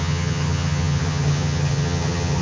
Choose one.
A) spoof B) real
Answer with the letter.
A